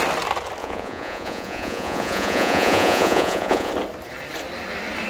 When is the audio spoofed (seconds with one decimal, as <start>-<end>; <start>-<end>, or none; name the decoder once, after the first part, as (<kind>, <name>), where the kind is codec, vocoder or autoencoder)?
0.6-3.7 (vocoder, Vocos)